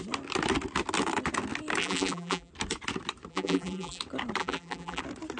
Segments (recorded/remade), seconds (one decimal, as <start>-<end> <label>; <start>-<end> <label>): 0.0-1.8 recorded; 1.8-2.5 remade; 2.5-3.3 recorded; 3.3-4.0 remade; 4.0-4.4 recorded; 4.4-5.0 remade; 5.0-5.4 recorded